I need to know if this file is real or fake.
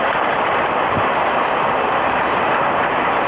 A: real